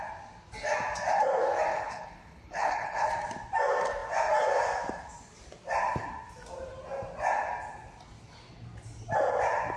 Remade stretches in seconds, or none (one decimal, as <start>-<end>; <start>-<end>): 1.7-3.1